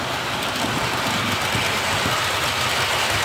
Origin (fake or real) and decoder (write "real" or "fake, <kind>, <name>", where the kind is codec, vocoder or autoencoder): real